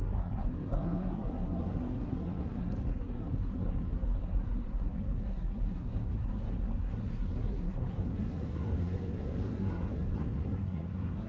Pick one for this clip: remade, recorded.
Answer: remade